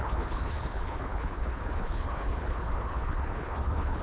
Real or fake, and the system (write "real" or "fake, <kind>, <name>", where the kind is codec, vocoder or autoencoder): fake, codec, HILCodec